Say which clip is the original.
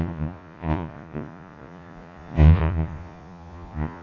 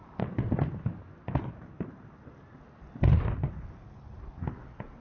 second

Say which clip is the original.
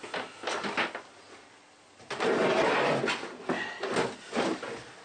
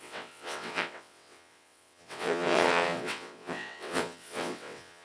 first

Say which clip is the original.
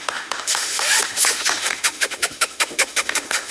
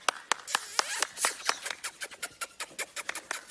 second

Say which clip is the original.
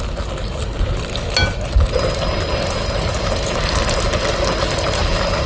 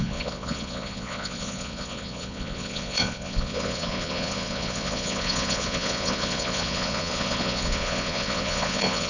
first